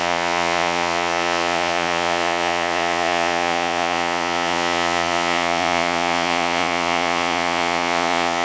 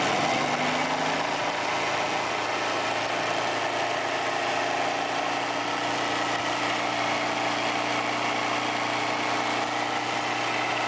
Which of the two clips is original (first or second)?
second